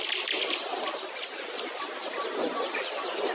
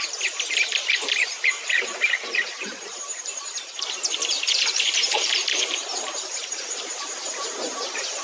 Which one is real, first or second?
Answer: first